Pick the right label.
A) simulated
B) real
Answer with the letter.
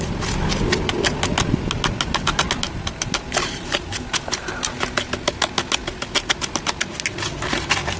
B